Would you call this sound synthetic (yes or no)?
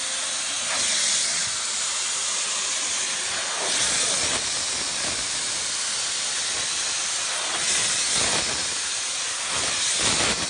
no